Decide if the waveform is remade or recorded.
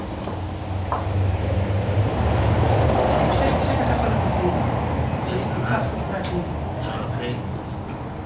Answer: recorded